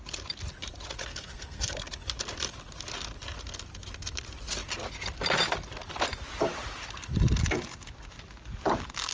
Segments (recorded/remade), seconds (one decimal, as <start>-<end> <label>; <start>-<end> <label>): 0.0-1.1 recorded; 1.1-1.7 remade; 1.7-9.1 recorded